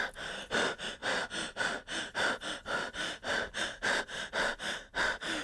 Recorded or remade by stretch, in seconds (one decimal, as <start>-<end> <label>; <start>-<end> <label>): 0.0-5.4 recorded